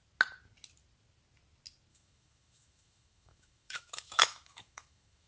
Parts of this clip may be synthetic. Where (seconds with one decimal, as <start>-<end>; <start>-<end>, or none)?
1.9-5.3